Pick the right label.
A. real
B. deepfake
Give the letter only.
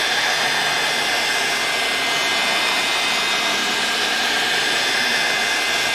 A